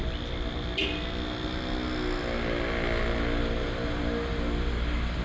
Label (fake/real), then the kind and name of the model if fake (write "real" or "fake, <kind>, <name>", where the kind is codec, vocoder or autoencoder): real